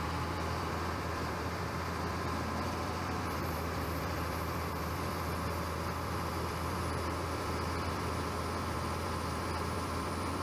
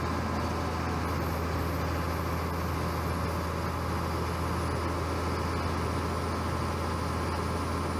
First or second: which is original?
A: second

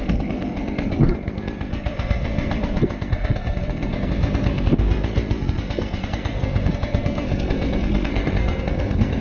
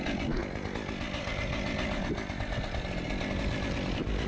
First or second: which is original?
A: second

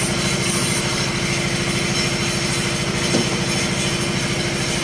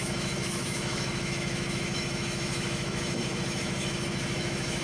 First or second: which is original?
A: first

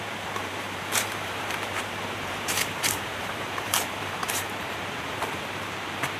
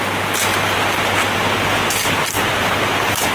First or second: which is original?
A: second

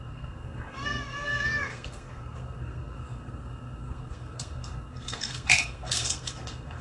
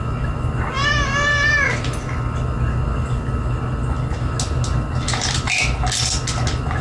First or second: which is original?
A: second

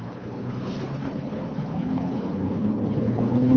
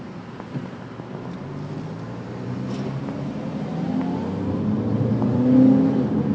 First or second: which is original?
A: second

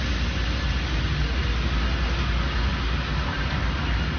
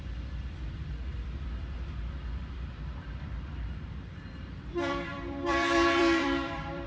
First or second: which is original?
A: first